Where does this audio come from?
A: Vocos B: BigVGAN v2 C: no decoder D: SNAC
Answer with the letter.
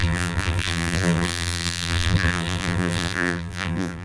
B